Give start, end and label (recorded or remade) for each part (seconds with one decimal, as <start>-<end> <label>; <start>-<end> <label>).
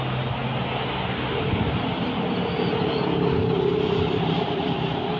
0.0-5.2 recorded